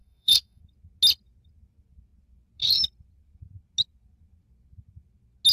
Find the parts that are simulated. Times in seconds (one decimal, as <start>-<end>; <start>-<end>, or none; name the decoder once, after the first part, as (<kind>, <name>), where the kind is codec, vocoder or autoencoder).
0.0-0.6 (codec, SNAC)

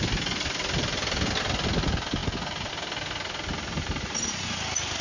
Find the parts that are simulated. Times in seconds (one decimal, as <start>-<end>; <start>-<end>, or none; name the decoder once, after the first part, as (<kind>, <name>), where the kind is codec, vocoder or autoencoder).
none

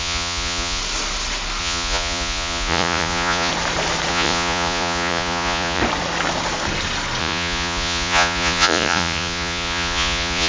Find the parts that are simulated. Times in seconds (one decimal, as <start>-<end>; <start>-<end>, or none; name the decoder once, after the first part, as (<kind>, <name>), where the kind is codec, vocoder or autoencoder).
0.0-0.8 (vocoder, Vocos); 1.6-3.5; 4.1-5.8; 7.2-10.5

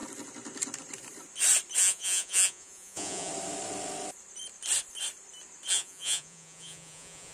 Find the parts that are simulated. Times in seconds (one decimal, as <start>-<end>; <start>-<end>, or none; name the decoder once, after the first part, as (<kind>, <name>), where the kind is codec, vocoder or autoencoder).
1.8-3.3 (vocoder, Vocos); 5.7-7.3